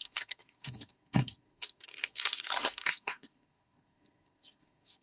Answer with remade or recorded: remade